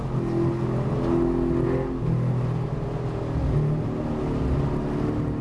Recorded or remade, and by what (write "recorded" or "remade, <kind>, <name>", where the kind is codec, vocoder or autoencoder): recorded